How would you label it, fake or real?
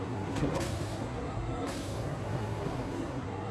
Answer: fake